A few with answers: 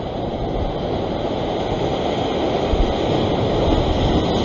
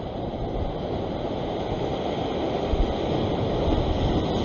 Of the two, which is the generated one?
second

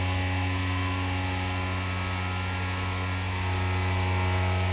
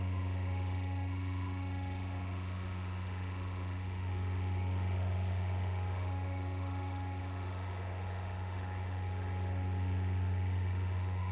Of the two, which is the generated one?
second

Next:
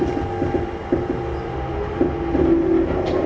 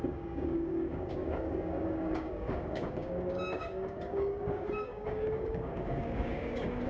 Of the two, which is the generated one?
second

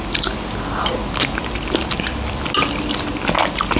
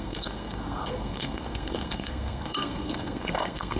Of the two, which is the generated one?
second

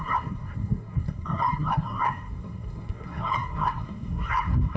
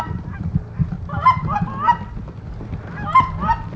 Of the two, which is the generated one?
first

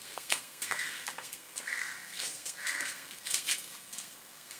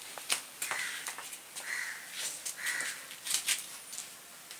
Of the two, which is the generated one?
first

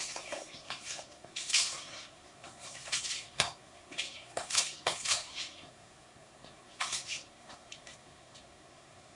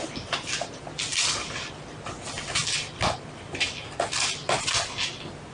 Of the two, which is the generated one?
first